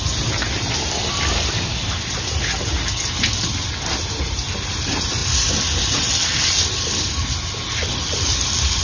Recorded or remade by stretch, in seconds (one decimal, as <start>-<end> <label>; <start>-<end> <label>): 0.0-8.8 recorded